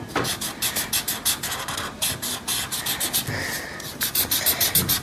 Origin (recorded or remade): recorded